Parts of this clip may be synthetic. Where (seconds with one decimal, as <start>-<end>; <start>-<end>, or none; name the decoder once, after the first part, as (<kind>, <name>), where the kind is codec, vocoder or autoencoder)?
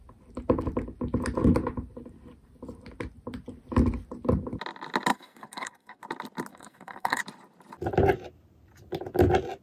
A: 5.1-6.0 (codec, SNAC); 6.5-7.2